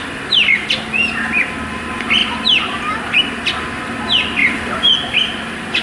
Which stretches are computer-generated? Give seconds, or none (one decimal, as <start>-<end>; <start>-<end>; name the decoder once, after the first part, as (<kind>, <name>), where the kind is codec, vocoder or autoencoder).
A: 2.2-3.2 (vocoder, BigVGAN v2); 4.4-4.9